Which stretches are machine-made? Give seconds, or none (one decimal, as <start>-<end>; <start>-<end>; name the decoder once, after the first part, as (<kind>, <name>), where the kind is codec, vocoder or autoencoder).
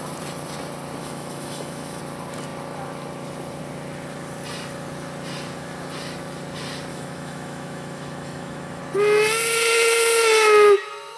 1.0-2.0 (autoencoder, DAC-VAE); 6.9-8.8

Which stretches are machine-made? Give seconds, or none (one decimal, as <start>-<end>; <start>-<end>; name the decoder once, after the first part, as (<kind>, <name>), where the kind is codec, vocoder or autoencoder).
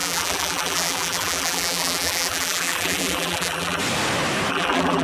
0.0-3.8 (vocoder, BigVGAN v2); 4.5-5.0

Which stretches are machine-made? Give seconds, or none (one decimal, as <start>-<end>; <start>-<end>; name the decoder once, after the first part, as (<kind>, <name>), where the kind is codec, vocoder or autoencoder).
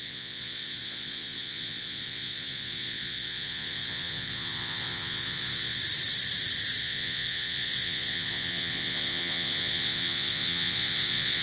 0.0-5.8 (vocoder, Vocos); 6.8-11.4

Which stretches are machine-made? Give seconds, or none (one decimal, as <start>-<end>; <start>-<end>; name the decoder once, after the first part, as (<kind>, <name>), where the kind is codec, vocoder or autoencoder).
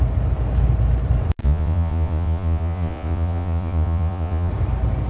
1.4-4.5 (vocoder, Vocos)